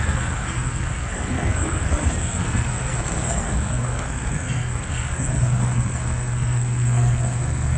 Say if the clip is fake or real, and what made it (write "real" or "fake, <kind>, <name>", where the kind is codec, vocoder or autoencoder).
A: fake, codec, SNAC